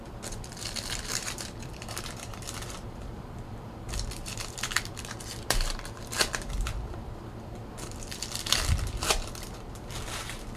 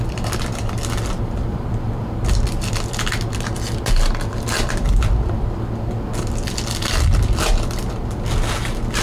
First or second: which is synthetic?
first